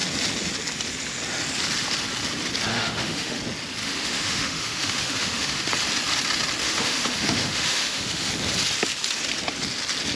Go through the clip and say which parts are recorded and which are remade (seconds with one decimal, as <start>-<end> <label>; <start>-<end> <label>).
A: 0.0-2.7 recorded; 2.7-3.4 remade; 3.4-3.8 recorded; 3.8-5.7 remade; 5.7-6.6 recorded; 6.6-8.3 remade; 8.3-10.2 recorded